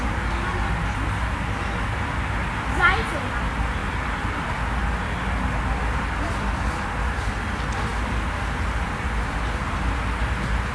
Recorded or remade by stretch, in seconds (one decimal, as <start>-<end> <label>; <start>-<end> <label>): 0.0-10.7 recorded